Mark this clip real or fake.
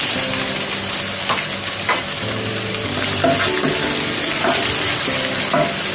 real